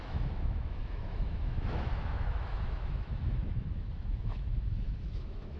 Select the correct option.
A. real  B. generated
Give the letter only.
B